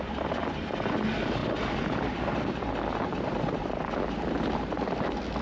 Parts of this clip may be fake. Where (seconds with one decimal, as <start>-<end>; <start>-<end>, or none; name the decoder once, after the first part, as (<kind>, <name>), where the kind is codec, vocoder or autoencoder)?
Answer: none